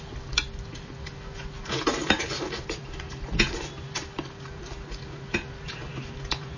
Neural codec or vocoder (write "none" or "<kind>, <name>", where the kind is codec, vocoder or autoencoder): none